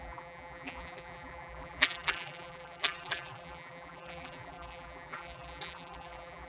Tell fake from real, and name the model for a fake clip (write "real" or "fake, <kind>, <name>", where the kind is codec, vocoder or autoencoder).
fake, vocoder, BigVGAN v2